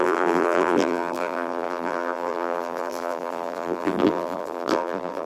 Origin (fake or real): fake